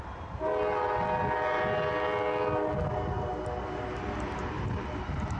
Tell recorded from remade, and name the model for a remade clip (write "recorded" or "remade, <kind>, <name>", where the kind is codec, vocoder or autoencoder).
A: recorded